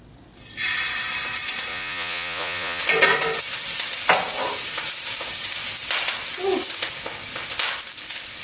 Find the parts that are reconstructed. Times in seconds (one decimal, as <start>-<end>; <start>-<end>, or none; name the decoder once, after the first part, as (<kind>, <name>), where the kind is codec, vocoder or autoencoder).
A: 1.7-2.8 (vocoder, Vocos)